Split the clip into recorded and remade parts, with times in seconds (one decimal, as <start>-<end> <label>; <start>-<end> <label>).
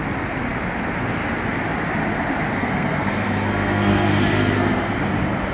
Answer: 0.0-2.6 recorded; 2.6-4.9 remade; 4.9-5.5 recorded